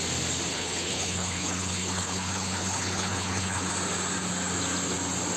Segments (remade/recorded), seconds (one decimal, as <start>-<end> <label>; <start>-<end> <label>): 0.0-0.5 recorded; 0.5-3.7 remade; 3.7-5.4 recorded